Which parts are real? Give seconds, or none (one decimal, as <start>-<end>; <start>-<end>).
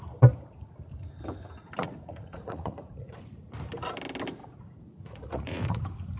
0.0-1.8; 3.3-4.4; 5.8-6.2